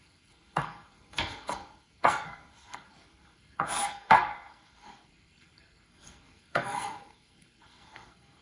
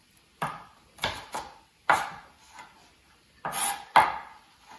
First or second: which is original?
second